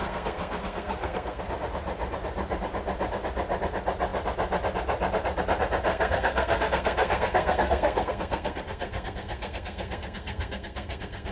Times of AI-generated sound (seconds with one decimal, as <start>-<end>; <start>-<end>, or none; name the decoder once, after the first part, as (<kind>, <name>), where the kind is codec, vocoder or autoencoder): 0.0-1.4 (codec, SNAC); 5.9-11.3